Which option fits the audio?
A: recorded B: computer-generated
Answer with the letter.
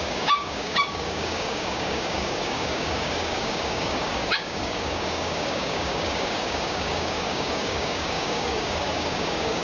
B